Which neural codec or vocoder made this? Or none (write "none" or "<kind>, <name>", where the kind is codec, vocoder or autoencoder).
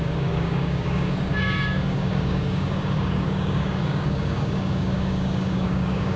codec, DAC